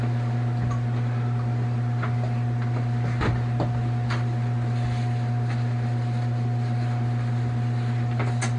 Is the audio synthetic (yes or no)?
no